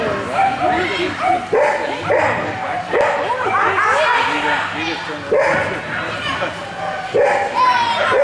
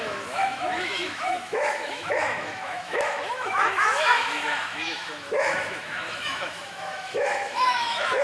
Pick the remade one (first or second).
second